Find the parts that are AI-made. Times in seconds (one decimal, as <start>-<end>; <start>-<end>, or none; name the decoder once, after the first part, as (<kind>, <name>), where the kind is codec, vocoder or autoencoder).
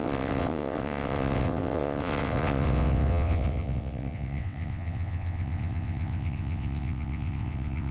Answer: 0.0-7.9 (vocoder, WaveNeXt)